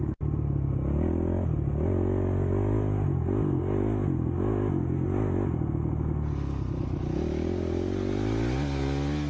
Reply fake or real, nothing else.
real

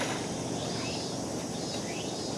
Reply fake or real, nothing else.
real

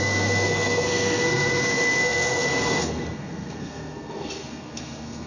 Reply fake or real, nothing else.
fake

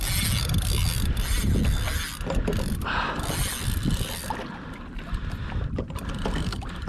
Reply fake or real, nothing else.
real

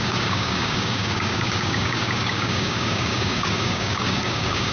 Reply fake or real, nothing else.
fake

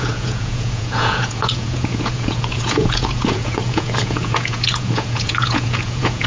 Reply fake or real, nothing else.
fake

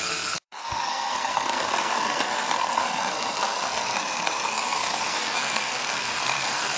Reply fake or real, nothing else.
fake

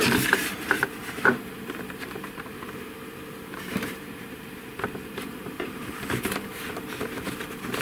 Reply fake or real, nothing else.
fake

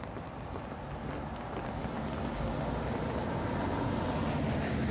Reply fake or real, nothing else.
real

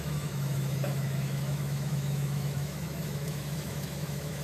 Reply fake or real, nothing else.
fake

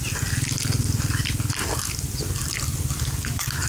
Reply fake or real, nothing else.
real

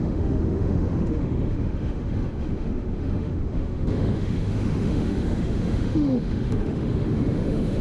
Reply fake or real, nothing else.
fake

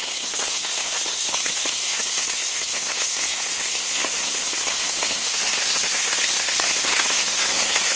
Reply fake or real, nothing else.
fake